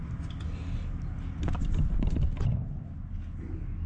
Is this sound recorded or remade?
recorded